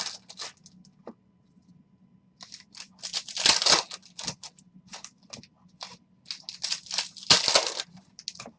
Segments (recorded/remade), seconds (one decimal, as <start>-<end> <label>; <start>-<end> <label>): 0.0-8.6 recorded